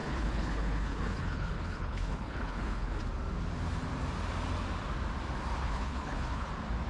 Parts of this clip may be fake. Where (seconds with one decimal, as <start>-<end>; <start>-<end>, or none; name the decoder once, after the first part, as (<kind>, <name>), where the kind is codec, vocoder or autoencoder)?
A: 0.0-3.0 (codec, HILCodec); 5.6-6.5